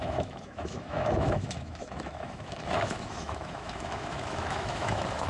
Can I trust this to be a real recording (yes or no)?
no